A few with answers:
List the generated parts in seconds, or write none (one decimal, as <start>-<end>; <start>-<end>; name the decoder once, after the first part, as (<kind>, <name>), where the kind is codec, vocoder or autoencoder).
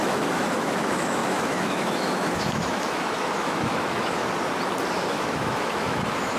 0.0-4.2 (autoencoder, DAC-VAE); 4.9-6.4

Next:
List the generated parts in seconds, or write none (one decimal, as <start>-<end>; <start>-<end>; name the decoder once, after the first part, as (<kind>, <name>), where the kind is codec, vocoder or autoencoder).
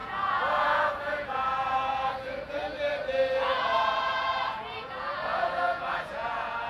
0.0-2.6 (vocoder, Vocos); 3.4-6.7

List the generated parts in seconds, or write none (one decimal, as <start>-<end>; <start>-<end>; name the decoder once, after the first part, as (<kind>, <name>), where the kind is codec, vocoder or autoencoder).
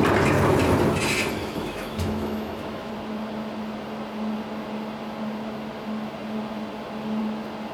1.4-2.9 (autoencoder, DAC-VAE)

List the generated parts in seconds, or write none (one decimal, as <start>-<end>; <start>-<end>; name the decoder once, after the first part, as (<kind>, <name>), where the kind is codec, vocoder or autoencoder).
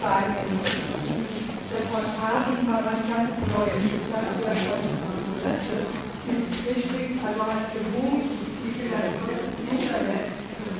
0.0-6.2 (vocoder, WaveNeXt); 9.0-10.8